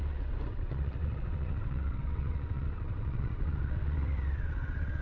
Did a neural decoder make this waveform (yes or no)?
yes